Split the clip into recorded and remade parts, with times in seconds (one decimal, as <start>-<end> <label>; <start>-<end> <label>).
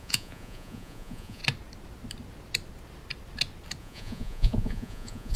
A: 0.0-1.4 remade; 1.4-3.8 recorded; 3.8-5.4 remade